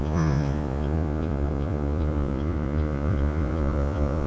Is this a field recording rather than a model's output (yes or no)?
no